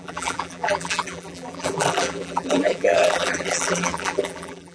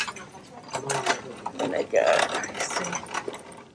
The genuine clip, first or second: second